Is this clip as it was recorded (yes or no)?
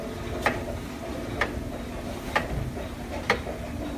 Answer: yes